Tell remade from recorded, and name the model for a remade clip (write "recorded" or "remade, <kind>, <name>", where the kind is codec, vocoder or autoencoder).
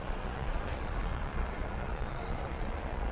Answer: remade, vocoder, Vocos